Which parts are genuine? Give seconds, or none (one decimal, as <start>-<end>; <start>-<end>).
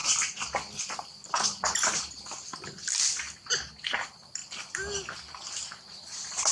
0.0-4.4; 5.4-6.5